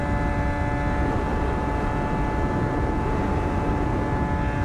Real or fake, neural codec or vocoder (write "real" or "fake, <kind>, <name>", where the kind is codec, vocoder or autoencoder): real